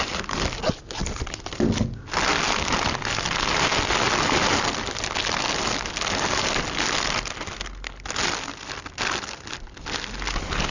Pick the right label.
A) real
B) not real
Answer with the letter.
A